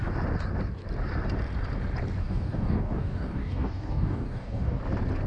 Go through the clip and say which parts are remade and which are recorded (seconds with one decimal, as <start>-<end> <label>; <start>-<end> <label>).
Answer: 0.0-2.2 recorded; 2.2-4.8 remade; 4.8-5.3 recorded